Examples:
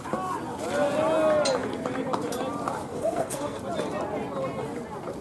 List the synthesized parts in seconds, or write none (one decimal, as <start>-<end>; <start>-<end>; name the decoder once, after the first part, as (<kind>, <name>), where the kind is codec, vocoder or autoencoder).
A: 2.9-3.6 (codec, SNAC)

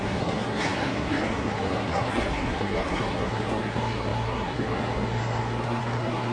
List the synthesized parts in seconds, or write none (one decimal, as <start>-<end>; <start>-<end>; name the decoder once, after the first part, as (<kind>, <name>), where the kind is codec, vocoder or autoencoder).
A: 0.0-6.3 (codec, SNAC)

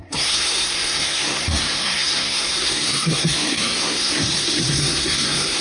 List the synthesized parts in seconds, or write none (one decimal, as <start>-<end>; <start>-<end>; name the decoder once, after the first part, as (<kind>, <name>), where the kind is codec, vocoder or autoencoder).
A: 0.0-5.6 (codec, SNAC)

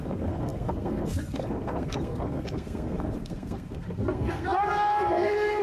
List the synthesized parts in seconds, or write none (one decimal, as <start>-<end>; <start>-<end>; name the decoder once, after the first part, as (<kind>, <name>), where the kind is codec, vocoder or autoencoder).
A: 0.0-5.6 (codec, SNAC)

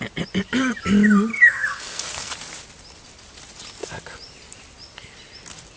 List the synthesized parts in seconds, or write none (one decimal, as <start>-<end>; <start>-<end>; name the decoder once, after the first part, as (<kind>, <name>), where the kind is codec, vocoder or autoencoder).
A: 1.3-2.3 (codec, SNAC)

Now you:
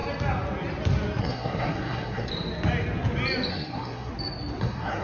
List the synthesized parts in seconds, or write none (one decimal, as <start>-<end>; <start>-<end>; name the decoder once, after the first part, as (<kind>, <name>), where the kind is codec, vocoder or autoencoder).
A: 1.2-2.3 (codec, SNAC); 3.5-4.1; 4.6-5.0

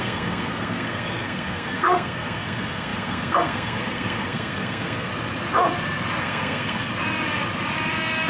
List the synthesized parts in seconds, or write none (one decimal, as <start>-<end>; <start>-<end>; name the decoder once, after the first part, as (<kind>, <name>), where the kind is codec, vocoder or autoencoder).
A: 0.0-5.1 (codec, SNAC); 6.2-6.9

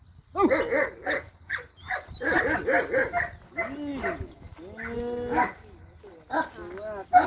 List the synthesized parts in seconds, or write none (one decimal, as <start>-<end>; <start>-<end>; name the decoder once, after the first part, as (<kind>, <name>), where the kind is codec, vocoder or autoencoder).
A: none